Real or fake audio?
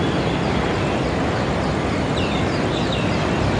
real